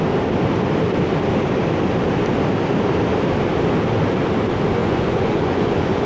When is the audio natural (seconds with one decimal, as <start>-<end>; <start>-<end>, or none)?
0.0-4.8